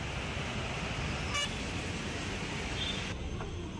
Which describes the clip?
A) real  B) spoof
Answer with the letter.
A